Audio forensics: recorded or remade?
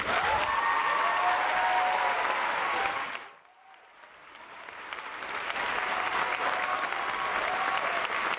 recorded